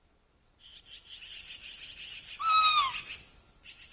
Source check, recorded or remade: recorded